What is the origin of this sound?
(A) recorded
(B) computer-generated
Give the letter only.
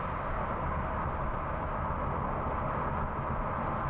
A